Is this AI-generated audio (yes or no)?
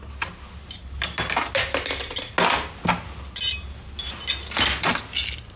no